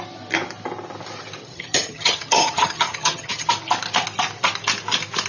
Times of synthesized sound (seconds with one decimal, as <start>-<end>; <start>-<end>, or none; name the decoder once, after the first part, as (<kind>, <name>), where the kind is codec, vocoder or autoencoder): 1.4-3.5 (vocoder, HiFi-GAN)